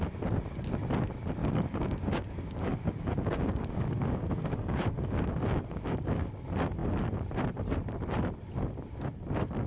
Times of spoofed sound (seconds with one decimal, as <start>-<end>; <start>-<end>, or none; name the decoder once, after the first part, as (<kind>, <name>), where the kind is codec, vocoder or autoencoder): 1.4-6.3 (codec, DAC)